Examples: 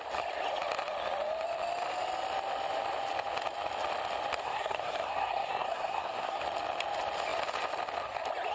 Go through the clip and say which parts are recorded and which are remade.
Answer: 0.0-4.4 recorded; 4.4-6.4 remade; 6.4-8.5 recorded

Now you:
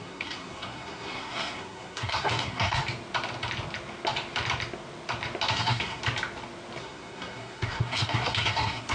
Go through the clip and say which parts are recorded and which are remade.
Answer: 0.0-2.8 remade; 2.8-5.5 recorded; 5.5-6.0 remade; 6.0-6.8 recorded; 6.8-8.9 remade